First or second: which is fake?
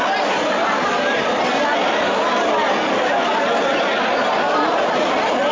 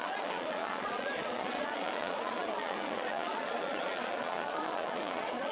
second